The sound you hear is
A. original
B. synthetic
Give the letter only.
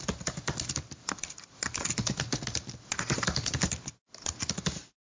A